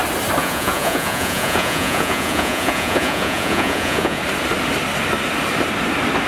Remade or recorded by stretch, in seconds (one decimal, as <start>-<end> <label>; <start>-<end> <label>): 0.0-0.4 recorded; 0.4-4.2 remade; 4.2-6.3 recorded